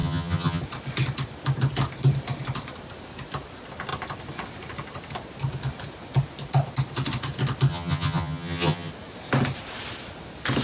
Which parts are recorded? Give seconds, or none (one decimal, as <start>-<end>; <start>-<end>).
0.6-7.7; 8.9-10.6